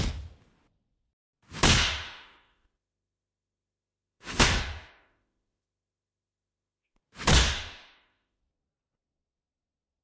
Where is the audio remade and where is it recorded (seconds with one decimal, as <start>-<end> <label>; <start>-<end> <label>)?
0.0-1.8 recorded; 1.8-7.0 remade; 7.0-7.4 recorded; 7.4-8.4 remade; 8.4-10.0 recorded